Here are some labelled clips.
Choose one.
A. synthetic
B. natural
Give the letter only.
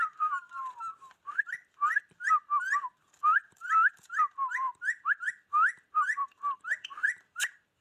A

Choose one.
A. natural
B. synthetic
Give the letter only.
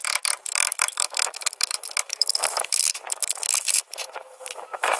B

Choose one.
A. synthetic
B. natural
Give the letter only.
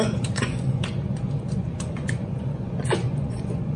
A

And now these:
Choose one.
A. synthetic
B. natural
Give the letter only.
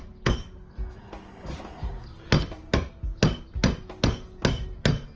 B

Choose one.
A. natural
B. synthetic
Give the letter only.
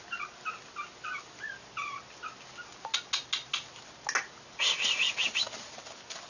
A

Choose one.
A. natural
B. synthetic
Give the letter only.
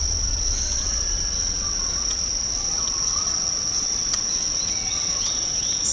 B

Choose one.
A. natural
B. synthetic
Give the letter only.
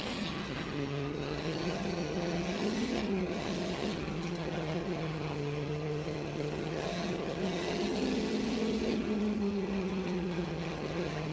B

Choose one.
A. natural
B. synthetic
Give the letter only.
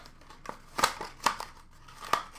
A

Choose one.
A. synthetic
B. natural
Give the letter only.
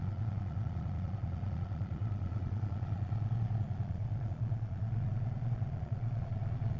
A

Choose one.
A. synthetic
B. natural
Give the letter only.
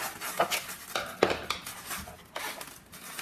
B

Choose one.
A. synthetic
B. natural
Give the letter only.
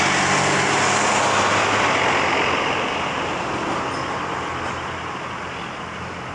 B